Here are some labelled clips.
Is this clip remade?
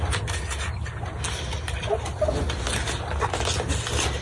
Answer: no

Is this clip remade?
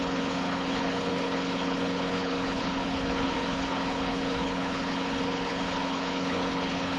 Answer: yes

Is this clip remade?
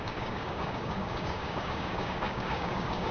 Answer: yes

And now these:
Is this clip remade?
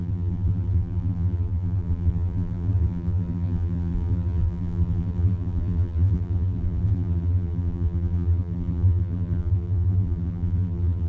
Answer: yes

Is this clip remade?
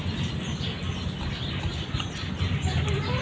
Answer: no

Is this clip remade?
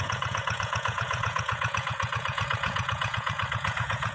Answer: yes